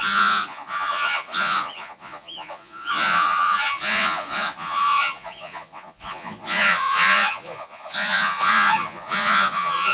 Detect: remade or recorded remade